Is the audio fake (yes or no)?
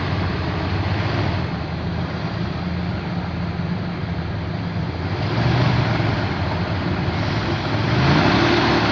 no